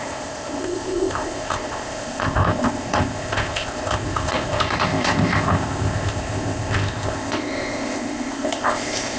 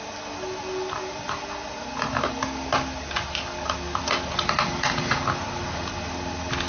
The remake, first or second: first